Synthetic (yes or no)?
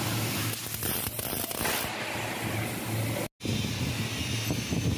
no